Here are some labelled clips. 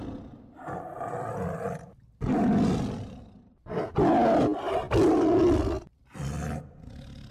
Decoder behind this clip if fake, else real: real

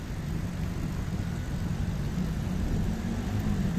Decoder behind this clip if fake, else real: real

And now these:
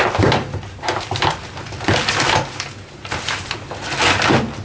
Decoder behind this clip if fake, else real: real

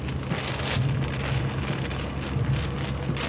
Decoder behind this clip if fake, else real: real